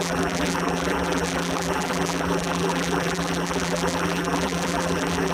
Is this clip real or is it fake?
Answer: fake